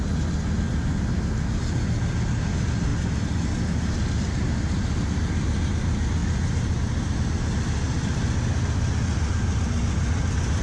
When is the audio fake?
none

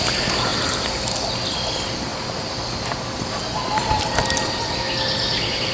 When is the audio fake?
none

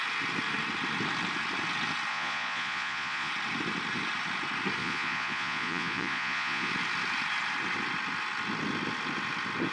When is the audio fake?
2.1-3.3 (vocoder, Vocos); 4.8-6.7

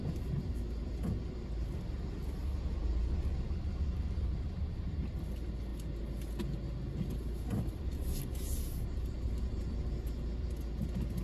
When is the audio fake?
none

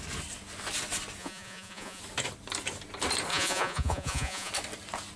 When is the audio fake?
1.2-2.0 (vocoder, Vocos); 3.3-4.5

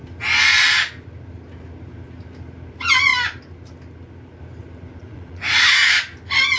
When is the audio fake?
5.0-5.7 (vocoder, Vocos)

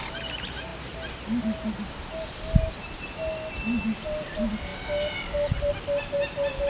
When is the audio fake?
none

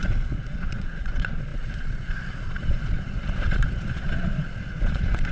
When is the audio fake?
0.0-5.3 (vocoder, Vocos)